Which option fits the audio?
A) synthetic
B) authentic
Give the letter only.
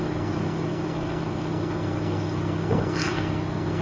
A